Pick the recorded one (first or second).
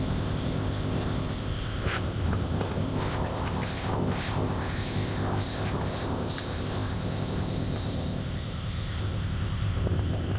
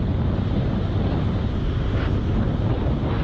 second